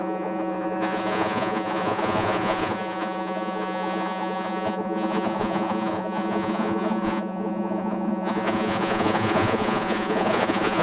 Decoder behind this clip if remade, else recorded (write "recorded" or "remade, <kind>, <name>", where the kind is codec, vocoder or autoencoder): remade, vocoder, Vocos